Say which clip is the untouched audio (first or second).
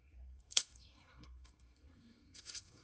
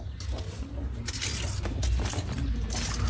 second